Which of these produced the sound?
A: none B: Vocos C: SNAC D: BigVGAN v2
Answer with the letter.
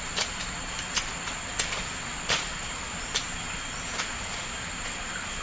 A